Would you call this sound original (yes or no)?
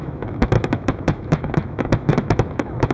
no